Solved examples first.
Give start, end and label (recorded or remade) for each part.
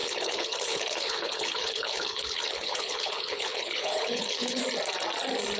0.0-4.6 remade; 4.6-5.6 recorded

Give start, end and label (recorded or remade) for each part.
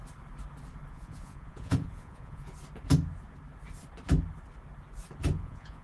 0.0-0.9 recorded; 0.9-2.5 remade; 2.5-5.3 recorded; 5.3-5.8 remade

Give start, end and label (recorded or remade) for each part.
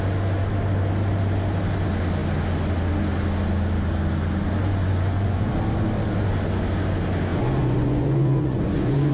0.0-4.7 recorded; 4.7-5.5 remade; 5.5-7.3 recorded; 7.3-9.1 remade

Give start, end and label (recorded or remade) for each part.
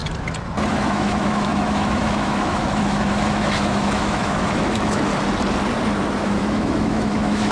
0.0-0.7 recorded; 0.7-5.1 remade; 5.1-6.2 recorded; 6.2-7.5 remade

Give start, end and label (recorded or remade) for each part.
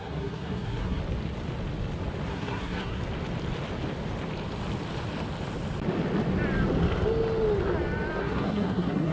0.0-1.0 remade; 1.0-2.3 recorded; 2.3-3.0 remade; 3.0-8.2 recorded; 8.2-9.1 remade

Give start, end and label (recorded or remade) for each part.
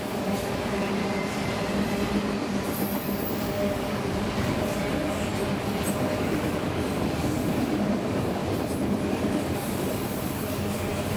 0.0-1.0 remade; 1.0-3.3 recorded; 3.3-5.3 remade; 5.3-5.9 recorded; 5.9-8.4 remade; 8.4-9.1 recorded; 9.1-11.2 remade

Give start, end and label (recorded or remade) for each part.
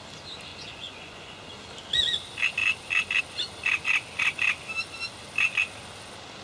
0.0-0.5 recorded; 0.5-1.4 remade; 1.4-6.4 recorded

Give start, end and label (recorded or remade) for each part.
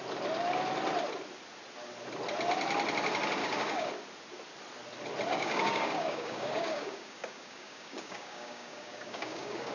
0.0-3.4 recorded; 3.4-3.9 remade; 3.9-5.3 recorded; 5.3-9.7 remade